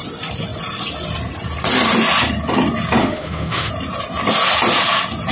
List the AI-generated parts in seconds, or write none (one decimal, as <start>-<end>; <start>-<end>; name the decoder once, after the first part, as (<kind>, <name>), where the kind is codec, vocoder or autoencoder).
3.0-3.7 (autoencoder, DAC-VAE)